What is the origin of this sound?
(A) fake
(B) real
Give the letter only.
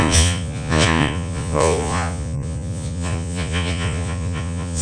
A